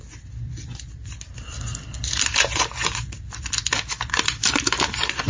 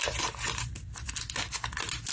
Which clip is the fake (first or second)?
first